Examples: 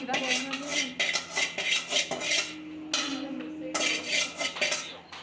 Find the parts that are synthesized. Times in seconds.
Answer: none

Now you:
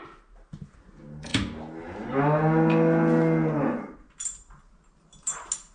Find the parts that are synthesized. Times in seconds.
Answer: none